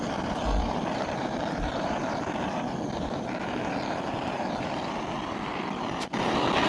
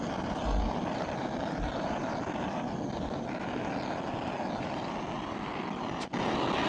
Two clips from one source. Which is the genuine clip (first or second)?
second